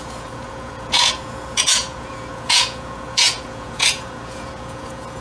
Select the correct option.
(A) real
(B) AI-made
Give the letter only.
B